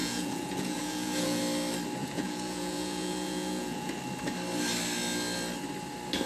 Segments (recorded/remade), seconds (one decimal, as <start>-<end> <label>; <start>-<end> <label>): 0.0-1.4 remade; 1.4-2.0 recorded; 2.0-3.9 remade; 3.9-6.3 recorded